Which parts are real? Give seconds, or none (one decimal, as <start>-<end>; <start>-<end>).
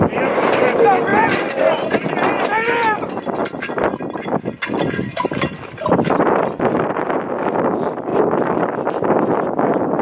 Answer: 8.1-9.1